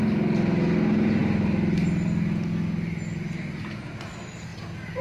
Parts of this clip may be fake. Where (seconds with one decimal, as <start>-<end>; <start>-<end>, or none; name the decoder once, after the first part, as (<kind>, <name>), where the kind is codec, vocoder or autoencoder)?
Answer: none